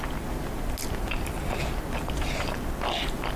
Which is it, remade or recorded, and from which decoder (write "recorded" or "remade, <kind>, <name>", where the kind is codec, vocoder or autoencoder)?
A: recorded